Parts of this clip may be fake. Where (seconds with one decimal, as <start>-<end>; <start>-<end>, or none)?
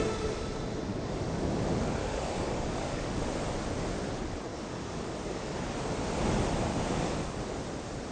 0.9-1.5; 2.0-3.2; 4.5-5.5; 6.7-7.4